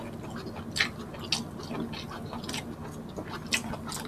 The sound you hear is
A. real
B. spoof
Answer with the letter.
A